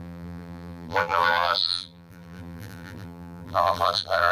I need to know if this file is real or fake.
fake